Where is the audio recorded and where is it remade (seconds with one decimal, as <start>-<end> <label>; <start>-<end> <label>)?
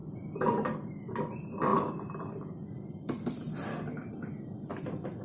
0.0-5.2 recorded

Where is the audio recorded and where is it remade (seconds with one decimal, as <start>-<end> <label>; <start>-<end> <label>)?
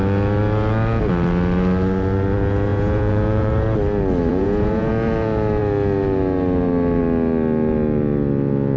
0.0-2.7 recorded; 2.7-3.5 remade; 3.5-4.3 recorded; 4.3-4.9 remade; 4.9-8.8 recorded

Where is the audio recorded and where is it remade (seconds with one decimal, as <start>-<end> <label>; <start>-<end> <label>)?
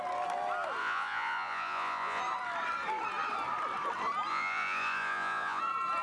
0.0-0.8 recorded; 0.8-2.2 remade; 2.2-4.3 recorded; 4.3-5.6 remade; 5.6-6.0 recorded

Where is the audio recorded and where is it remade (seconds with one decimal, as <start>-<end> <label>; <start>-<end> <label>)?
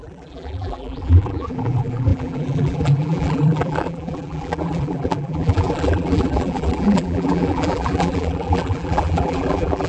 0.0-9.9 remade